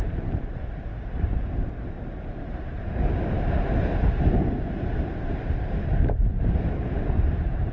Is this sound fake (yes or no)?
yes